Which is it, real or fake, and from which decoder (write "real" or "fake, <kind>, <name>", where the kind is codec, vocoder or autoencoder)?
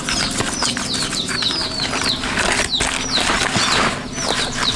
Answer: real